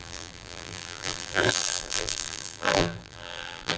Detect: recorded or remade remade